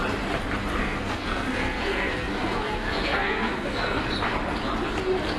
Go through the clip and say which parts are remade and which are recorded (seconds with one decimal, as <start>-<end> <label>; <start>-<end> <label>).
0.0-0.8 recorded; 0.8-4.0 remade; 4.0-5.4 recorded